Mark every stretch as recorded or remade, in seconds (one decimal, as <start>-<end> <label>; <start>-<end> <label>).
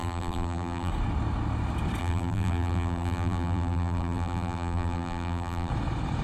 0.0-0.9 remade; 0.9-2.0 recorded; 2.0-5.7 remade; 5.7-6.2 recorded